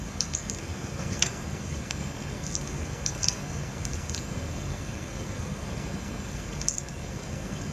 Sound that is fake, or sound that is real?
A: fake